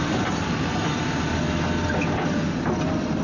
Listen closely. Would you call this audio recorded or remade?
recorded